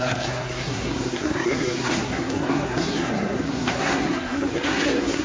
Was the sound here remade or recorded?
remade